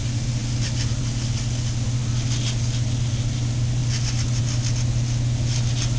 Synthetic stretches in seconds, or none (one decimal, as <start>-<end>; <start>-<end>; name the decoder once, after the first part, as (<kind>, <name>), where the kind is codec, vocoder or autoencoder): none